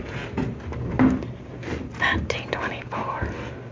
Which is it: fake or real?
real